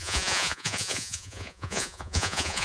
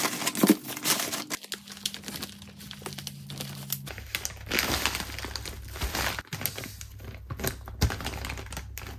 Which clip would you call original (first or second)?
second